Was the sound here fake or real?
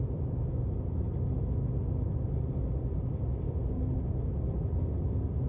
real